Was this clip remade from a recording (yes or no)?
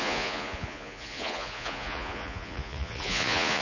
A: yes